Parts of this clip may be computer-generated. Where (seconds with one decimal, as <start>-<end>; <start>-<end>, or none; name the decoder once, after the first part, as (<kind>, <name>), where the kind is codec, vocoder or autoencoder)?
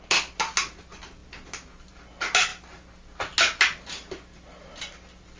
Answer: none